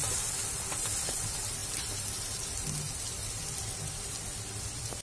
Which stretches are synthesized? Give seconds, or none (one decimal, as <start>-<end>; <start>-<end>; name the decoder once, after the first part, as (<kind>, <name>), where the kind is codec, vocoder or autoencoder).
none